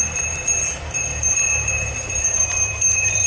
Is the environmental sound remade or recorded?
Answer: remade